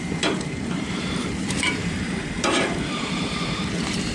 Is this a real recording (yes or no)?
no